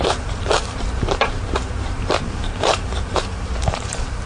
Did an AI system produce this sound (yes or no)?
yes